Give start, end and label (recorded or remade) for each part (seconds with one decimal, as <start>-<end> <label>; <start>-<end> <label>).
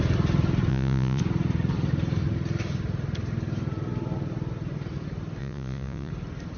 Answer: 0.0-0.7 recorded; 0.7-1.2 remade; 1.2-5.4 recorded; 5.4-6.1 remade; 6.1-6.6 recorded